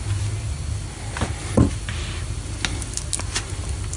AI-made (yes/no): no